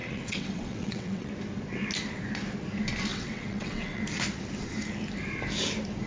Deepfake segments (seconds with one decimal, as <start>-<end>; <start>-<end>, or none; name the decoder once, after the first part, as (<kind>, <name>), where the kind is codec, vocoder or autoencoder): 0.0-1.3 (vocoder, WaveNeXt); 3.1-4.0